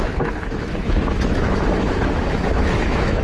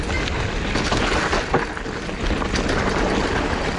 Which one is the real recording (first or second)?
second